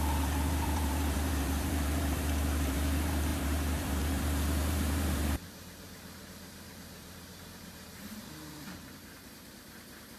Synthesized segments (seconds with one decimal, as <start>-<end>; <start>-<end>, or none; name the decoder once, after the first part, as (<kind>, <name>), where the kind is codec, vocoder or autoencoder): 0.0-10.2 (vocoder, BigVGAN v2)